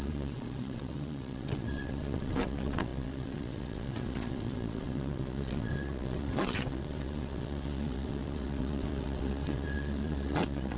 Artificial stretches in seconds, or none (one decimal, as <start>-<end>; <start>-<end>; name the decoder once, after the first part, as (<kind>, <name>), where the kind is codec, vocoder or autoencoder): 0.0-10.8 (vocoder, WaveNeXt)